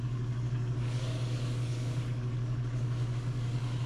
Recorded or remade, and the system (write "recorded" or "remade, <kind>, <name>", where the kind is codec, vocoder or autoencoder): remade, codec, DAC